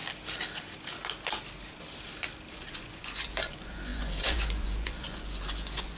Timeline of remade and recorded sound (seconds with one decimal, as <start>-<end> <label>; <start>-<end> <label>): 0.0-2.5 recorded; 2.5-6.0 remade